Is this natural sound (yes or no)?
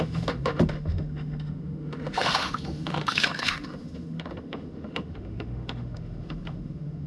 no